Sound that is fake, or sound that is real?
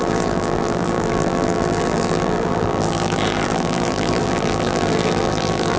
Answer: fake